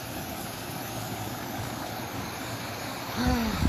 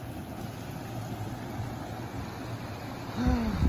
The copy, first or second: first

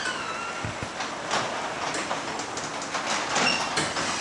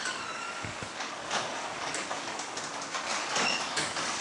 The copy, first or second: second